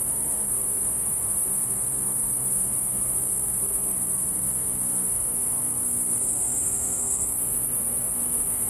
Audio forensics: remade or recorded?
remade